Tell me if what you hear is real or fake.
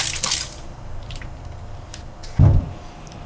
real